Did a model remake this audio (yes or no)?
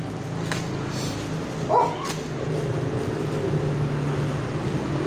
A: no